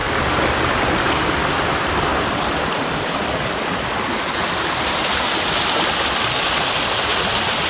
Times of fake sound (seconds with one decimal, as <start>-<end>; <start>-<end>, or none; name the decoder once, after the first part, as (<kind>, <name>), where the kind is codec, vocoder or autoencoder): none